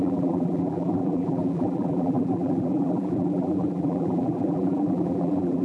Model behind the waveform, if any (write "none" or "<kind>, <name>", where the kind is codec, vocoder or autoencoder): vocoder, BigVGAN v2